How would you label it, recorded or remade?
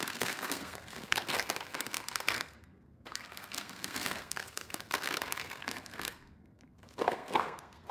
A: remade